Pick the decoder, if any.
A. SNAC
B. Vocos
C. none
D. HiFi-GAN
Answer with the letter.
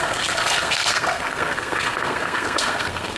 A